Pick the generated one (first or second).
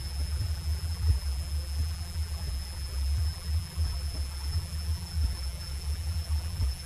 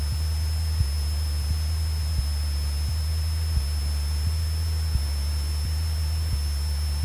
first